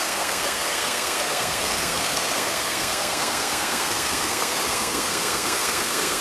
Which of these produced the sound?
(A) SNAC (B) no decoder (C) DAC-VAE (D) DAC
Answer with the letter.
A